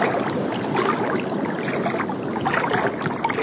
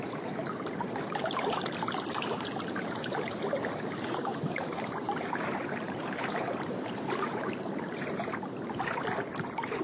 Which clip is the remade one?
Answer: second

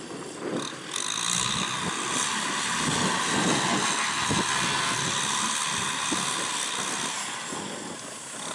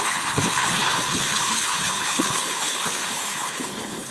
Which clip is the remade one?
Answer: second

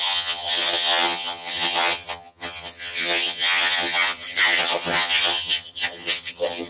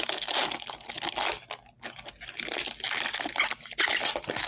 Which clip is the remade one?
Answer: first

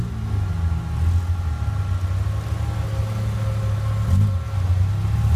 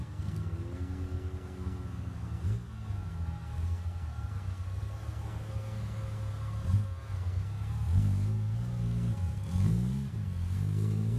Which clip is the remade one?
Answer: second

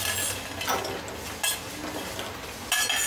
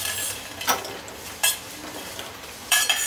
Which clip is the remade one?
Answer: second